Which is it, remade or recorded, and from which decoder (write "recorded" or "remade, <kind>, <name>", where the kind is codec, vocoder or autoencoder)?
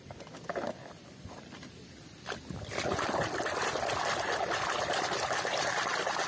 recorded